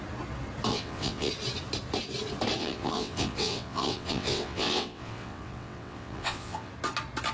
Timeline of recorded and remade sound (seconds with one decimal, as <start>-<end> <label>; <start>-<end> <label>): 0.0-0.7 recorded; 0.7-1.3 remade; 1.3-2.6 recorded; 2.6-6.7 remade; 6.7-7.3 recorded